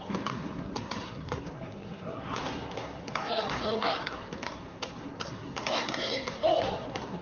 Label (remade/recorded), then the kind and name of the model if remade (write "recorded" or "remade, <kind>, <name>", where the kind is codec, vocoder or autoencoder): remade, codec, SNAC